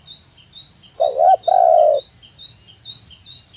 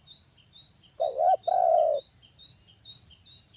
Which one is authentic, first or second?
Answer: first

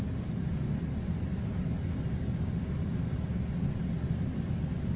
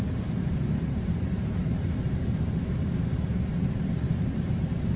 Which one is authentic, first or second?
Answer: first